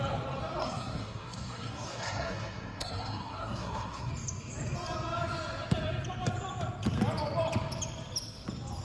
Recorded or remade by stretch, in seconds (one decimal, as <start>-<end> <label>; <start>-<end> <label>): 0.0-0.6 recorded; 0.6-4.1 remade; 4.1-8.8 recorded